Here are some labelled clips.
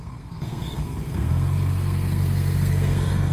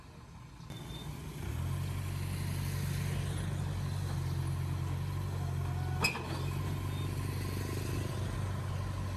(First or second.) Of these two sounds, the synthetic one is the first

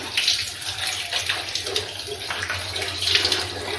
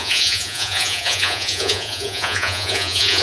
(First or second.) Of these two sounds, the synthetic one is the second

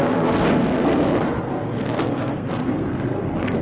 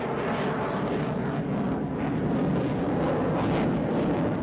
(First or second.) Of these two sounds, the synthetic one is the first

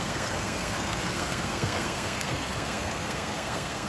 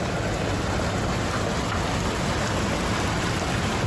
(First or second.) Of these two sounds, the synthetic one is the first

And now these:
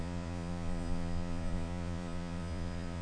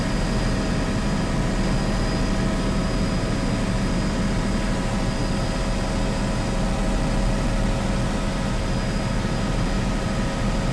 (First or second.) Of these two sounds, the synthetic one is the first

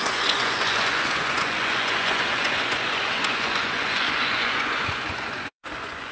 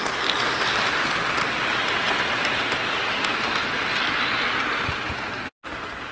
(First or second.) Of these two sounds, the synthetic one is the first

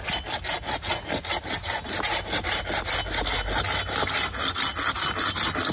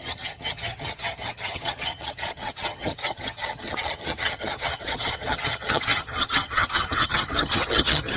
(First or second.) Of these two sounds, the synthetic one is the second